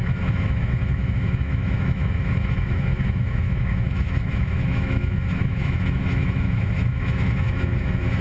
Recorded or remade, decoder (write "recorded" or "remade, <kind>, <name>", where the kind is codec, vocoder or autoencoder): remade, autoencoder, DAC-VAE